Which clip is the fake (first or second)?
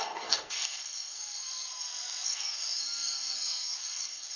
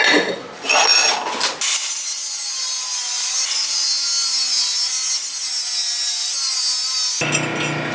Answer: first